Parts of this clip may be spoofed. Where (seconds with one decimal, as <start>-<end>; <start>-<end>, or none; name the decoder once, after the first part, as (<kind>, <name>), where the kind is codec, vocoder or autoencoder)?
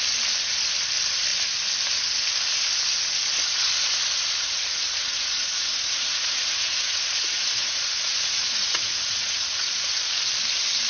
4.8-10.1 (vocoder, Vocos)